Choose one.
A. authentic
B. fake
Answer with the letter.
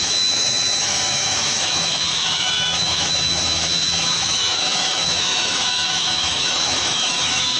B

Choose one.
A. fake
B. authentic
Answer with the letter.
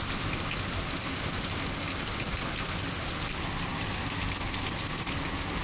B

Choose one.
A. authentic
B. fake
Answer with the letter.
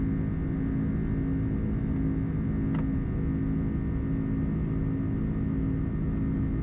A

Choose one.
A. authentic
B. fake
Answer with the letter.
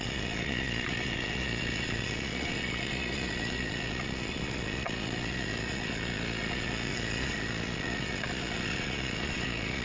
B